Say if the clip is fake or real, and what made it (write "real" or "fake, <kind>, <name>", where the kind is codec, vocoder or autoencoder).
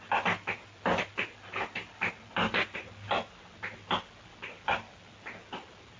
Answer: real